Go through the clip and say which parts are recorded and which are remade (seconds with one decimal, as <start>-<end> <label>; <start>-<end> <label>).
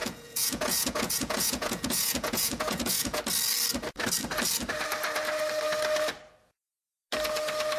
0.0-3.2 remade; 3.2-7.8 recorded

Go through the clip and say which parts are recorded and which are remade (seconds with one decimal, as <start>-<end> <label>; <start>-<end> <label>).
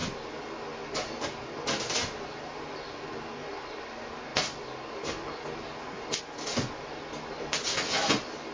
0.0-8.5 recorded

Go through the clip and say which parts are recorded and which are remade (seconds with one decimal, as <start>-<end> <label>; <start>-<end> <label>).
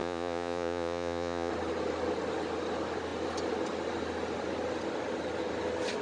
0.0-1.5 remade; 1.5-6.0 recorded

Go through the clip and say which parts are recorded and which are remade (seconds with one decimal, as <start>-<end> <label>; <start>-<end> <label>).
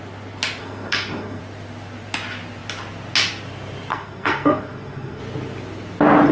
0.0-0.6 recorded; 0.6-1.4 remade; 1.4-3.9 recorded; 3.9-5.2 remade; 5.2-6.3 recorded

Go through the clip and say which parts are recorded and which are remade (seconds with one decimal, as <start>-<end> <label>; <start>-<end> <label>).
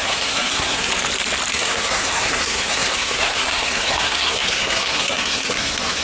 0.0-0.9 remade; 0.9-1.5 recorded; 1.5-6.0 remade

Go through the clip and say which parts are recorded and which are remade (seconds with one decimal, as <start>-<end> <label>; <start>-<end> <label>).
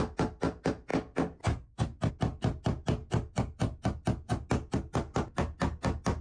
0.0-6.2 recorded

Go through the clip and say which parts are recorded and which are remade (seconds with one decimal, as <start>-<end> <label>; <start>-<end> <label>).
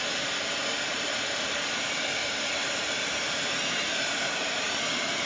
0.0-0.9 recorded; 0.9-1.6 remade; 1.6-2.2 recorded; 2.2-5.3 remade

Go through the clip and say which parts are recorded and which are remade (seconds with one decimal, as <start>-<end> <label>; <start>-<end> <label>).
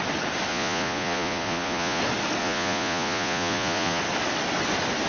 0.0-0.5 recorded; 0.5-2.0 remade; 2.0-2.4 recorded; 2.4-4.0 remade; 4.0-5.1 recorded